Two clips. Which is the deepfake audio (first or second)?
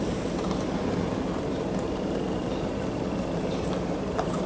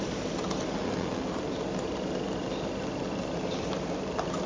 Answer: first